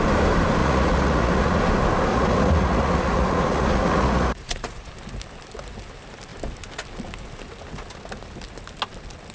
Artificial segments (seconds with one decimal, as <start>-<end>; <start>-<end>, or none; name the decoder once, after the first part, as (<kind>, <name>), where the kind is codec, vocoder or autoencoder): 0.6-1.6 (vocoder, Vocos); 2.1-4.9